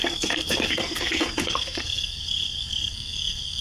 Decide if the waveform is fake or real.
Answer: fake